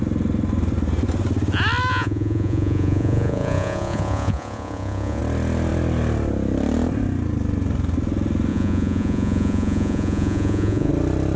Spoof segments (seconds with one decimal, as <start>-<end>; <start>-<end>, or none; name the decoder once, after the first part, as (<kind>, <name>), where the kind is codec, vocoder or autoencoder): 1.9-5.2 (vocoder, Vocos); 8.5-10.9